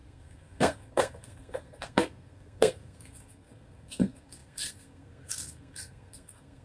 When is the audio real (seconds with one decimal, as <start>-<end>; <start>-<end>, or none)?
none